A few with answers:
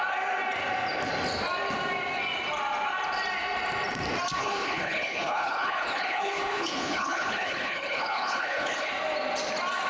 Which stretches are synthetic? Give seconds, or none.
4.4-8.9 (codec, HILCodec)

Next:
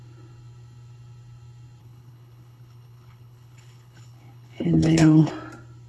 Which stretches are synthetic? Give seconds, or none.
1.8-5.3 (codec, HILCodec)

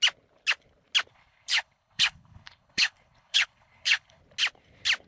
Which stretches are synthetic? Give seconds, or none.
1.1-4.2 (codec, HILCodec)

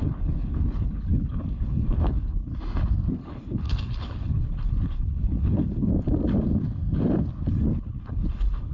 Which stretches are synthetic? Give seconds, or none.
0.0-2.5 (codec, HILCodec); 3.1-5.9; 7.5-8.7

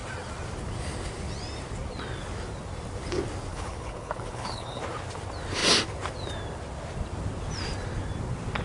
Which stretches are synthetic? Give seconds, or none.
3.5-4.8 (codec, HILCodec)

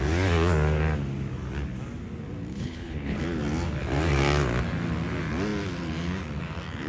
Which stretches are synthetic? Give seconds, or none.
2.5-3.2 (codec, HILCodec)

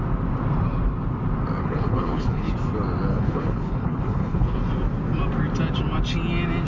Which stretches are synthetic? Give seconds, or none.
1.6-2.5 (codec, HILCodec); 3.1-4.7

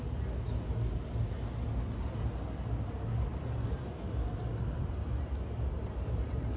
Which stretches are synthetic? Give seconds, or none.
none